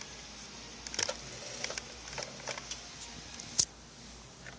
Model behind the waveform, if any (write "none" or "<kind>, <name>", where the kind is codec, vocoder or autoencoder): none